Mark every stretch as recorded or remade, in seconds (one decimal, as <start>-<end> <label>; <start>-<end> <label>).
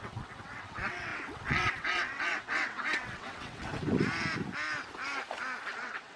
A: 0.0-3.7 remade; 3.7-5.7 recorded; 5.7-6.2 remade